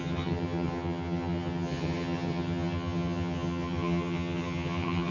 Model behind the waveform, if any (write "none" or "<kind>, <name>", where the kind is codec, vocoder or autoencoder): vocoder, HiFi-GAN